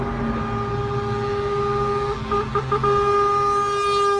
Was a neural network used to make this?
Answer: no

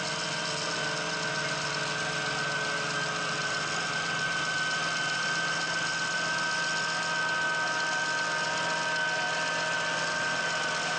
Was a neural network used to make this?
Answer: no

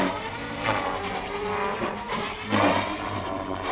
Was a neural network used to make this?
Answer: yes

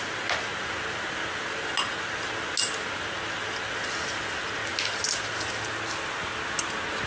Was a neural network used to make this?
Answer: no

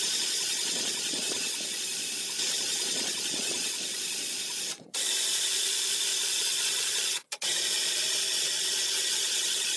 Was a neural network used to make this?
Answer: yes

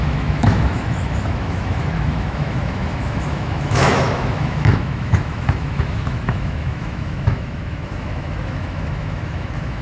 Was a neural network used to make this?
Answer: yes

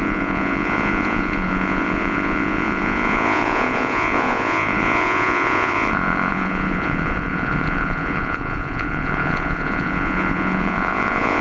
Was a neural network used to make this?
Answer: yes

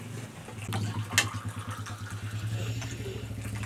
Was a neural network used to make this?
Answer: no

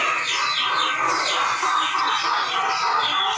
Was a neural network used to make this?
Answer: no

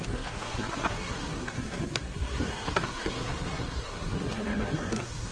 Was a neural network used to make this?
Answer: yes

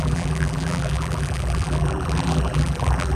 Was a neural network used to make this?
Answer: yes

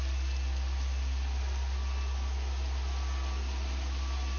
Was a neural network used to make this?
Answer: no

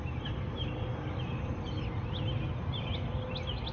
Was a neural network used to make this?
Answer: no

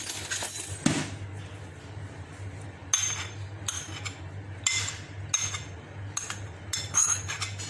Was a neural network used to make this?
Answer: no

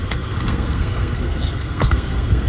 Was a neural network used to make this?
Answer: yes